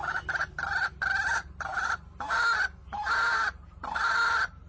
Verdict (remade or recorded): recorded